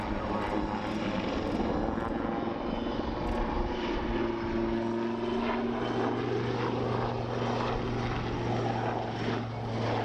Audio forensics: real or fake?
real